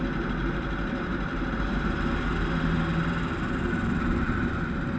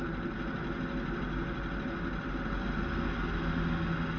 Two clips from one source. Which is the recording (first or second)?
second